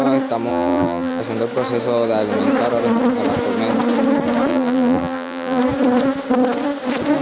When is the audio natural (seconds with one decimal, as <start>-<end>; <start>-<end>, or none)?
0.0-0.5; 1.2-4.5; 5.6-7.2